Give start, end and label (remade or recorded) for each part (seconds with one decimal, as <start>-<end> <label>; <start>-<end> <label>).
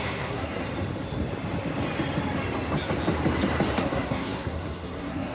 0.0-0.6 remade; 0.6-3.8 recorded; 3.8-5.3 remade